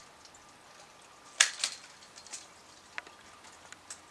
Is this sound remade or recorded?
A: recorded